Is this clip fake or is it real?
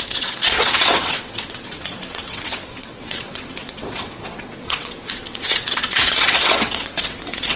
fake